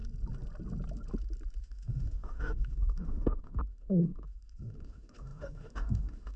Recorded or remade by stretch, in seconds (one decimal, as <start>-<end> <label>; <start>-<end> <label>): 0.0-1.6 recorded; 1.6-6.4 remade